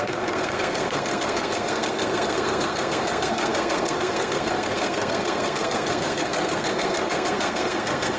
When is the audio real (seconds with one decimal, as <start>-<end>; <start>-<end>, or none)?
none

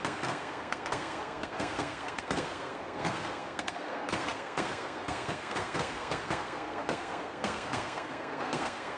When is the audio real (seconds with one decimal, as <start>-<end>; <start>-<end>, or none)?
none

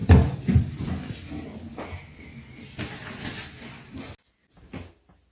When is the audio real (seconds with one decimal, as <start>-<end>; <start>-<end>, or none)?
0.0-5.3